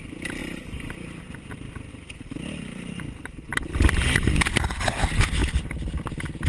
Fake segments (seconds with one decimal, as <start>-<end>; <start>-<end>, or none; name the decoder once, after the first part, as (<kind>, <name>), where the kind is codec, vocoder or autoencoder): 0.0-0.4 (vocoder, BigVGAN v2); 1.9-5.4